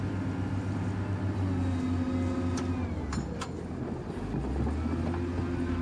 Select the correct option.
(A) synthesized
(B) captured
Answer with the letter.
B